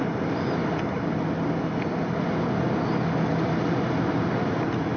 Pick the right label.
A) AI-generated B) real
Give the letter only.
B